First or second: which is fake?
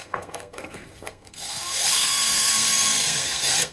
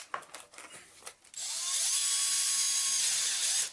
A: first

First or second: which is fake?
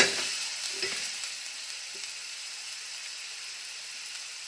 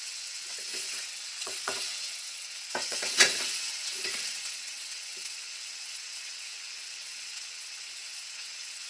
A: second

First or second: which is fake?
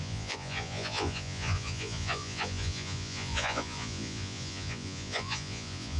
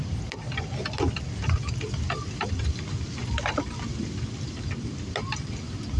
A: first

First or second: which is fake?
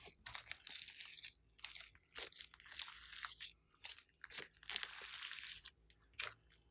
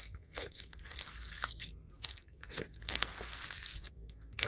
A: second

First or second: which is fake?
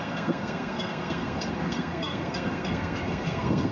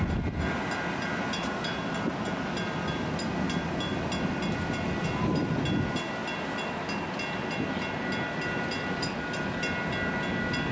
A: first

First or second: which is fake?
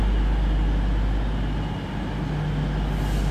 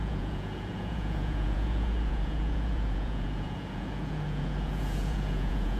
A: second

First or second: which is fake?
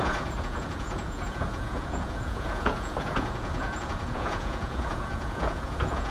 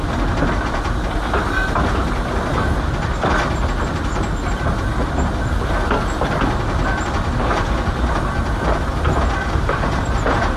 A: first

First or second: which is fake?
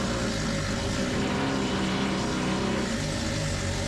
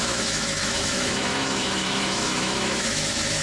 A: second